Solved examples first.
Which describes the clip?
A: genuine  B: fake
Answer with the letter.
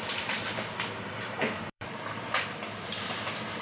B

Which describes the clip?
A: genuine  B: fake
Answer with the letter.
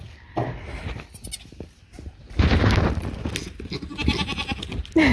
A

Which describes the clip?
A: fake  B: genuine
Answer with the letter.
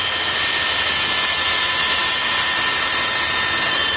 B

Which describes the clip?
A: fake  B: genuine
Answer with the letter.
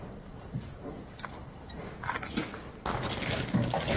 B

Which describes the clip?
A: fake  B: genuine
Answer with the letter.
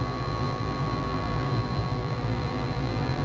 A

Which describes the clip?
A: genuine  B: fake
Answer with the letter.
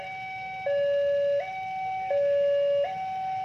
A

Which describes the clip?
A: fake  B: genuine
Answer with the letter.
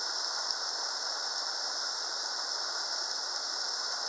B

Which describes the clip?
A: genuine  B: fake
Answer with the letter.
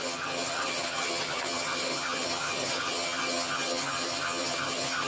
B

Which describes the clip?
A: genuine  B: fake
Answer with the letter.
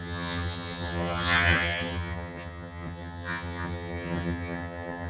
B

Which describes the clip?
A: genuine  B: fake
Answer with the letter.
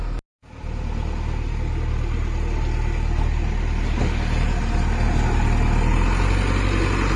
A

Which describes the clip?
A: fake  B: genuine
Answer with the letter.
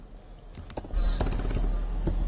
B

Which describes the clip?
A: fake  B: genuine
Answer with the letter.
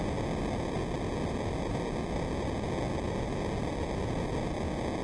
B